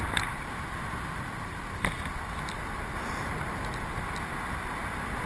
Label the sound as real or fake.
real